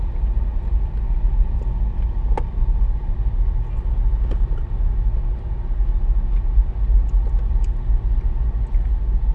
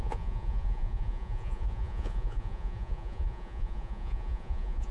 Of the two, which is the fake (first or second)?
second